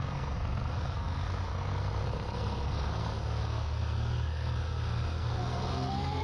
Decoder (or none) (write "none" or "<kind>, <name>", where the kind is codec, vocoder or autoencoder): codec, SNAC